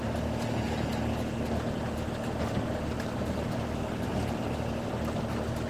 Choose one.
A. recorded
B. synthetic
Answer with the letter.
A